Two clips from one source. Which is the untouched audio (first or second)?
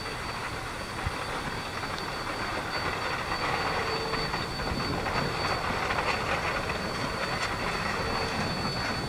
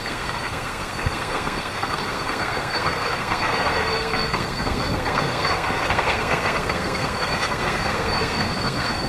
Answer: first